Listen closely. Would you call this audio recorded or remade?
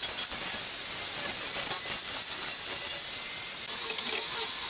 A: recorded